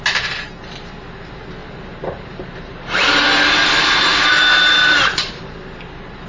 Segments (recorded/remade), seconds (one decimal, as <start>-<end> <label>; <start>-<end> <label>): 0.0-1.6 recorded; 1.6-5.4 remade; 5.4-6.3 recorded